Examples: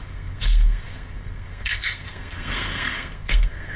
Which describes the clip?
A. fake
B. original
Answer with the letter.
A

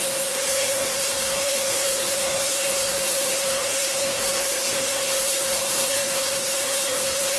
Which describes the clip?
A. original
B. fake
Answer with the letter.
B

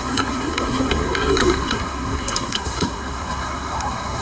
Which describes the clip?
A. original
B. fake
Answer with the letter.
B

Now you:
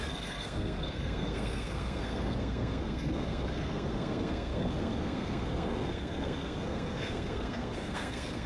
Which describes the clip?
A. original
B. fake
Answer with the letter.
B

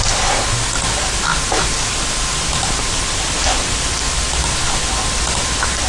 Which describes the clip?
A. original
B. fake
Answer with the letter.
A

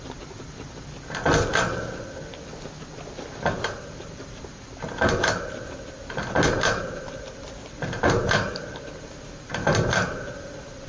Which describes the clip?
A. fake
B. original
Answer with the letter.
B